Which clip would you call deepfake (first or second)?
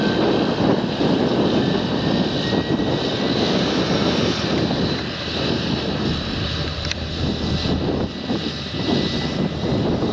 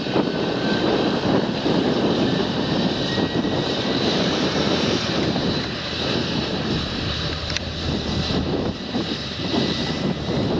second